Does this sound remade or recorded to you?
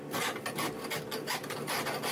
recorded